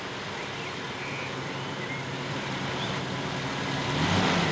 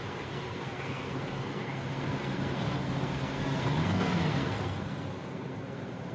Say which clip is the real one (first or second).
first